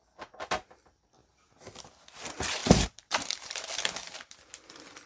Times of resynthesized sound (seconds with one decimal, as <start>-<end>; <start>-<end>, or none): 2.6-4.1